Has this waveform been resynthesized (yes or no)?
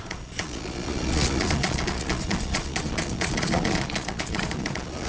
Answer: yes